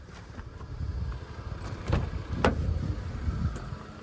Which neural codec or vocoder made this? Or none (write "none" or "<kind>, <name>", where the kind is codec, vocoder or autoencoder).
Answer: none